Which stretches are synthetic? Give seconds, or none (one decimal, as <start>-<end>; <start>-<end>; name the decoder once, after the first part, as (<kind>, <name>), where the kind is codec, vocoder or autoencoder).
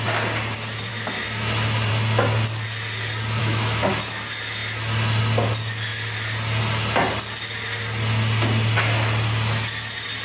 3.4-3.9 (autoencoder, DAC-VAE)